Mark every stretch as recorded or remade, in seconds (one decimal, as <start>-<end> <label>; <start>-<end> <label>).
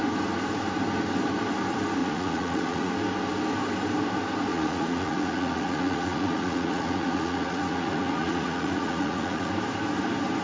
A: 0.0-2.0 recorded; 2.0-2.9 remade; 2.9-4.5 recorded; 4.5-9.5 remade; 9.5-10.4 recorded